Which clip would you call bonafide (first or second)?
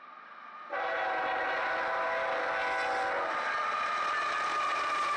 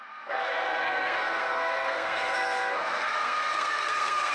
first